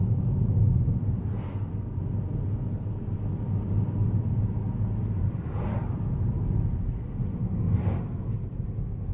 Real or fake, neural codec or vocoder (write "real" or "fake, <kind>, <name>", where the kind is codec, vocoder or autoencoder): real